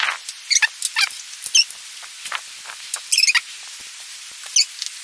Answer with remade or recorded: recorded